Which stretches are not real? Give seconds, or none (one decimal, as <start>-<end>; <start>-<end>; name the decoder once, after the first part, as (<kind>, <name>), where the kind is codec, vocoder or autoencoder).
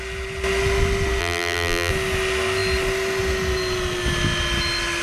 1.2-1.9 (vocoder, BigVGAN v2)